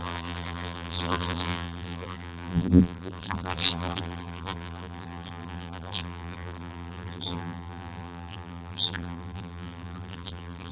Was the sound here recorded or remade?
remade